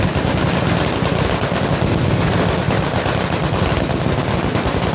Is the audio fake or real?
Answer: real